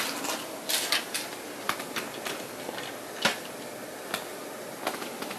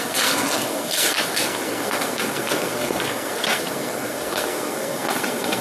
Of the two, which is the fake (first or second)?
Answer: second